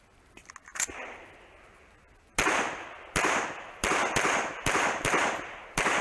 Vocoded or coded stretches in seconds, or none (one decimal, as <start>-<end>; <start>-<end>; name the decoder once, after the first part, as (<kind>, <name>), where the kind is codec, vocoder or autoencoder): none